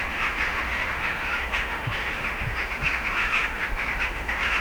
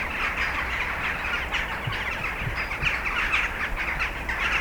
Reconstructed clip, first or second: first